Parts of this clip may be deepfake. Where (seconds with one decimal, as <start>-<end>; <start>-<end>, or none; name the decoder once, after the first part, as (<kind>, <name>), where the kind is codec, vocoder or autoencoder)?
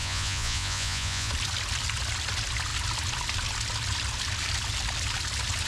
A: 0.0-1.3 (vocoder, Vocos)